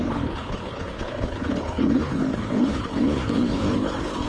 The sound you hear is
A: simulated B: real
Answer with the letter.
A